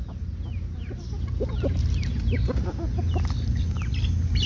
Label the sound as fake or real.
real